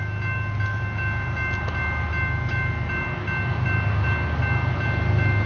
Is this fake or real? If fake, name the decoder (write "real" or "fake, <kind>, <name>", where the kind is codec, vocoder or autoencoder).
real